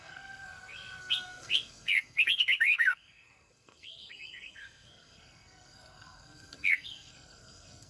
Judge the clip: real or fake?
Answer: fake